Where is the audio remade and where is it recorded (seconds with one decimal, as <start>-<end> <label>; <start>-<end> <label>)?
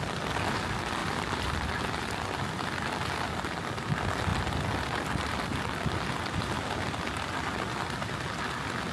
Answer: 0.0-1.0 recorded; 1.0-1.7 remade; 1.7-8.9 recorded